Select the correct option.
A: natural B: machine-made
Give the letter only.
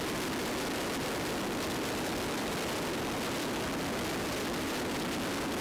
A